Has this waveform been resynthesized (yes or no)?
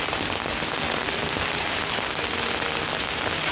no